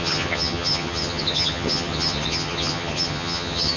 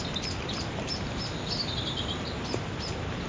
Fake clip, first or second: first